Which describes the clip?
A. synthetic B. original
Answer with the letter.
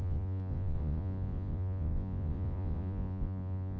A